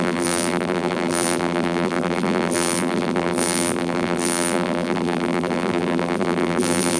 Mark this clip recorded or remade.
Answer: remade